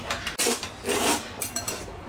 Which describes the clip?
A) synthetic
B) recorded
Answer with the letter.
B